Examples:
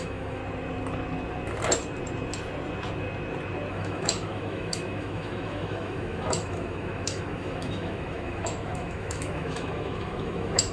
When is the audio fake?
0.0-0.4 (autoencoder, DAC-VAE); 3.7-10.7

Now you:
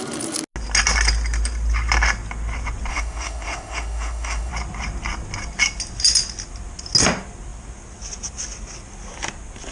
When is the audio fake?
2.9-4.5 (autoencoder, DAC-VAE)

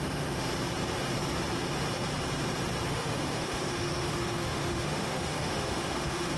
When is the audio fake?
0.0-0.5 (autoencoder, DAC-VAE); 2.9-6.4

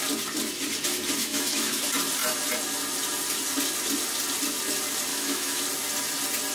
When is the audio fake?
1.2-1.8 (autoencoder, DAC-VAE); 5.1-5.6

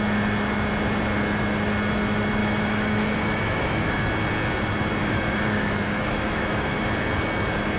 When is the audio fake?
2.4-3.9 (autoencoder, DAC-VAE); 5.0-6.9